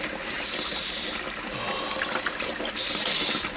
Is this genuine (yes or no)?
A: yes